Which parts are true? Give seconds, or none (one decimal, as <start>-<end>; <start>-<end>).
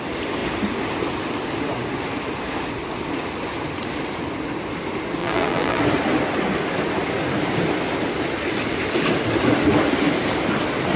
0.0-5.2; 5.8-11.0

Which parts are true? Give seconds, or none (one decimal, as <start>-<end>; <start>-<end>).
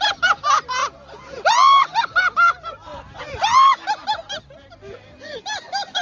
0.0-6.0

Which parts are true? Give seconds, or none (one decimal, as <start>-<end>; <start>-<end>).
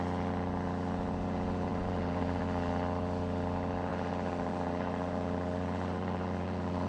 0.0-1.7; 2.4-3.9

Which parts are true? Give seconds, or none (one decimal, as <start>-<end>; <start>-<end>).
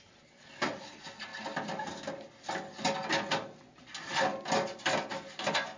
0.0-5.8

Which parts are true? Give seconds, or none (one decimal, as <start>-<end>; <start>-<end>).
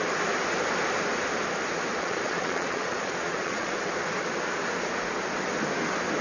0.0-1.9; 3.7-6.2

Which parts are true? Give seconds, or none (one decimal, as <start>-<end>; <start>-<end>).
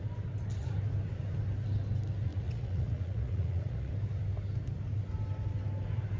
0.0-2.3; 3.9-6.2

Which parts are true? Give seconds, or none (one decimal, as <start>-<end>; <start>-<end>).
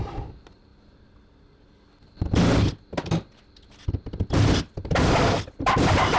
0.0-6.2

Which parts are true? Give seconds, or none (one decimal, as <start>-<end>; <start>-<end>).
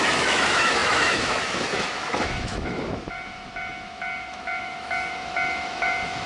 none